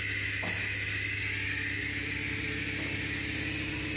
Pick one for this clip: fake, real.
real